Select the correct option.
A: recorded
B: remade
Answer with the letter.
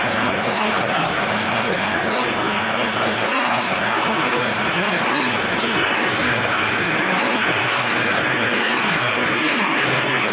B